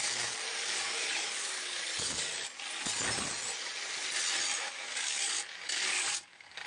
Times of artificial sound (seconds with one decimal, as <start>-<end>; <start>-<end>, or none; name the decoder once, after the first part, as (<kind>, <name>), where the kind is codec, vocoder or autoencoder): 0.0-2.3 (codec, DAC); 4.6-6.7